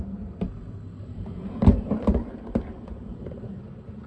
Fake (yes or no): yes